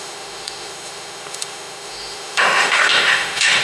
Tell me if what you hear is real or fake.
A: fake